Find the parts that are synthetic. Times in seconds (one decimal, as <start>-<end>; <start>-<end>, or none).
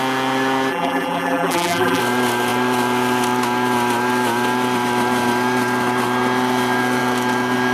0.7-2.0